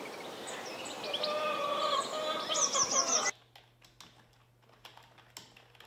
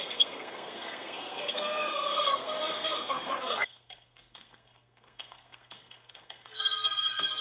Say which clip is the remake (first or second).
second